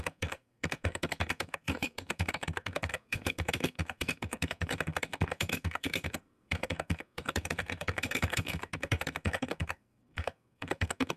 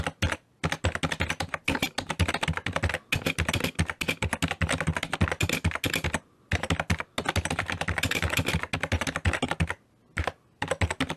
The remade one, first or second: first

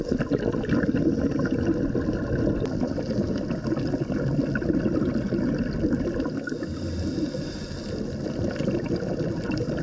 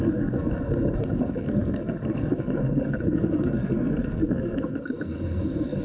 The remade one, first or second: second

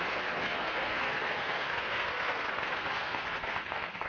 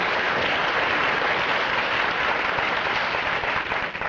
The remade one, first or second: first